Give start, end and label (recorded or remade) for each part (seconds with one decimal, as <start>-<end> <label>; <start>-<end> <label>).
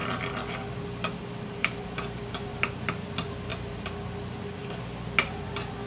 0.0-2.3 remade; 2.3-3.5 recorded; 3.5-4.1 remade; 4.1-5.9 recorded